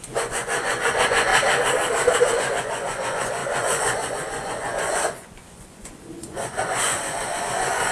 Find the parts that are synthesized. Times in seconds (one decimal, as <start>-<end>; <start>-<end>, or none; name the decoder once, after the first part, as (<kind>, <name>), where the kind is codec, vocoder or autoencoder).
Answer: 0.0-1.3 (vocoder, Vocos); 2.3-7.9